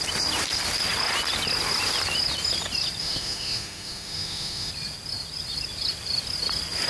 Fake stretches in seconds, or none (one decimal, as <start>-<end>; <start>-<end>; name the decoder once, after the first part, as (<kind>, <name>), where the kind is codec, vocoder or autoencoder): 3.0-4.7 (autoencoder, DAC-VAE)